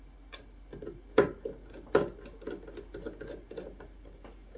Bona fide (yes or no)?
yes